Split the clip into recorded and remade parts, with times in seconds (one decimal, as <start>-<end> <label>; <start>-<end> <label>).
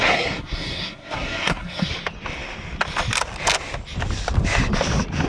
0.0-1.9 remade; 1.9-5.3 recorded